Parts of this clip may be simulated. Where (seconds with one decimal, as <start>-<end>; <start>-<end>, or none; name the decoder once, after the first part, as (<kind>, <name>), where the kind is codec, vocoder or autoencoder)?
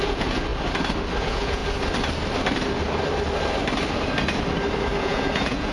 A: 0.0-0.5 (vocoder, Vocos); 1.2-1.6; 5.0-5.7